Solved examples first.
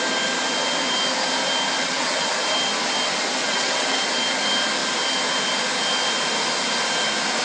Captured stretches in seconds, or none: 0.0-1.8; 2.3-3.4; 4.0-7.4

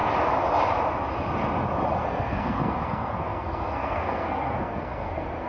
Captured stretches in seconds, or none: 0.0-2.0

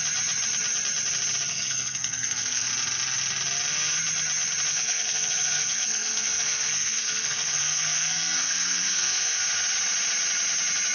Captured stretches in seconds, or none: 0.0-1.5; 2.7-4.7; 9.4-10.9

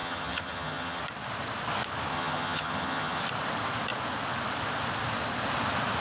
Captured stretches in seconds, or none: 1.0-2.1; 3.2-6.0

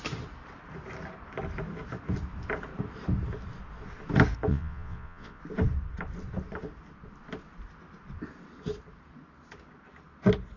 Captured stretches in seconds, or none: 0.0-4.5; 5.4-10.6

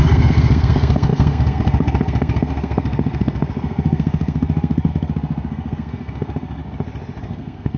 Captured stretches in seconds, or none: 6.6-7.2